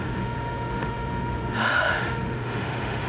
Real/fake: fake